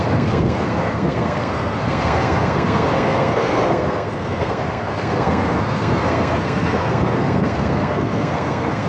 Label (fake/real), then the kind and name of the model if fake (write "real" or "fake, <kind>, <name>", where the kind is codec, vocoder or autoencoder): fake, codec, SNAC